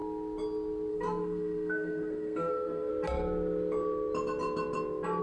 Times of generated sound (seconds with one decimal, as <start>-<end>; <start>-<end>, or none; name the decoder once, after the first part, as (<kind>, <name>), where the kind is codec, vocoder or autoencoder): 0.9-2.9 (codec, SNAC)